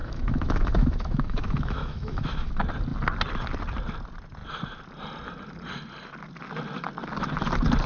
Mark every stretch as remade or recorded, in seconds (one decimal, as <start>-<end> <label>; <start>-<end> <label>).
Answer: 0.0-2.5 remade; 2.5-7.9 recorded